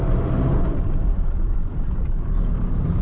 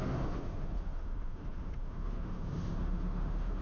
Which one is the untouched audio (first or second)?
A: first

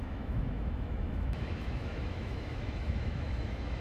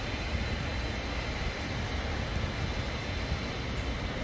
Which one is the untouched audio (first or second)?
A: second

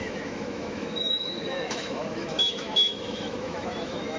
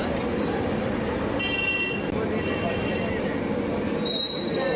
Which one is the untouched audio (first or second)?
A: second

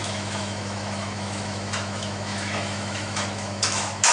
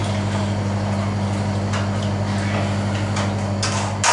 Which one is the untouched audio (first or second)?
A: second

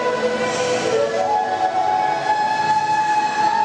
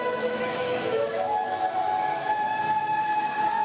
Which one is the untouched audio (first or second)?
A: first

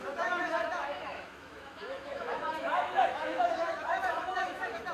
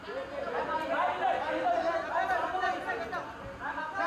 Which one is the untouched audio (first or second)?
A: second